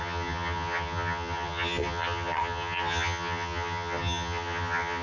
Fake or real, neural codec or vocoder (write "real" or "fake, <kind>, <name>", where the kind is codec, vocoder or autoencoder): fake, vocoder, HiFi-GAN